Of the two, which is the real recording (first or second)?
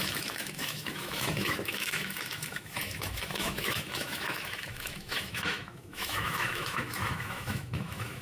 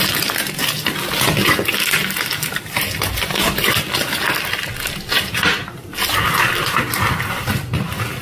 second